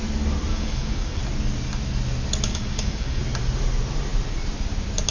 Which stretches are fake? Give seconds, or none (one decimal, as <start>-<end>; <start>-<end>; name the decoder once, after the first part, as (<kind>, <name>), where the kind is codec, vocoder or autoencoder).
0.5-1.2 (codec, DAC); 2.5-3.2